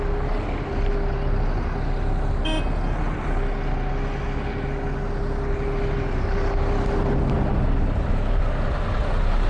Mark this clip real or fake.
real